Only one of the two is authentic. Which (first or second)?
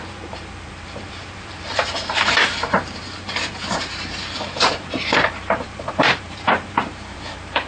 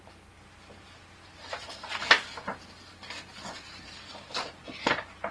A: second